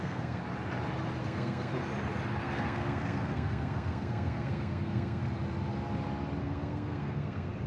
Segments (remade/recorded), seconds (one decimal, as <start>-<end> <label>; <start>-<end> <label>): 0.0-0.4 remade; 0.4-1.2 recorded; 1.2-1.7 remade; 1.7-2.4 recorded; 2.4-5.2 remade; 5.2-6.4 recorded; 6.4-7.7 remade